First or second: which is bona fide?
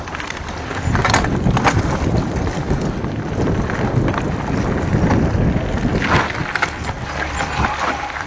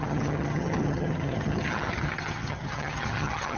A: first